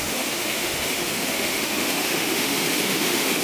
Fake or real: fake